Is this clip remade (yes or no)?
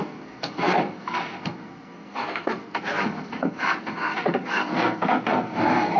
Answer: yes